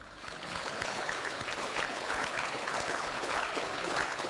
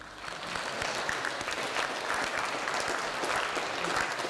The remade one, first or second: first